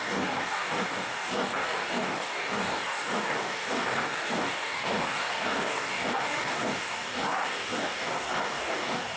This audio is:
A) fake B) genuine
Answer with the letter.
A